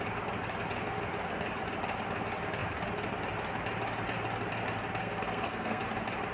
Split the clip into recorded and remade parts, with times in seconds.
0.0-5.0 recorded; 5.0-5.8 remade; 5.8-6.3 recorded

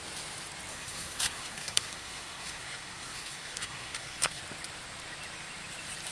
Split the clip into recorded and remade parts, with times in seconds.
0.0-0.7 recorded; 0.7-4.4 remade; 4.4-6.1 recorded

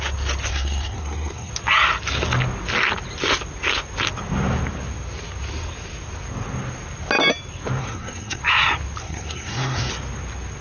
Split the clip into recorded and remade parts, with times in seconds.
0.0-0.5 recorded; 0.5-1.5 remade; 1.5-7.8 recorded; 7.8-8.4 remade; 8.4-9.0 recorded; 9.0-9.9 remade; 9.9-10.6 recorded

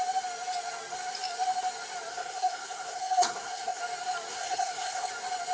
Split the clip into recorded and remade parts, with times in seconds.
0.0-2.1 recorded; 2.1-3.8 remade; 3.8-4.3 recorded; 4.3-5.1 remade; 5.1-5.5 recorded

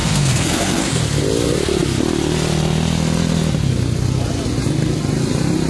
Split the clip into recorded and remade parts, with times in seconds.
0.0-1.0 remade; 1.0-5.7 recorded